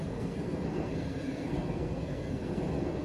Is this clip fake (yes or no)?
yes